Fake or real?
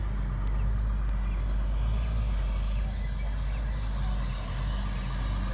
real